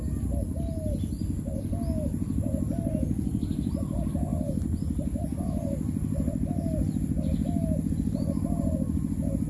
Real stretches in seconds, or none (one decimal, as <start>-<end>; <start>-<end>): 0.0-9.5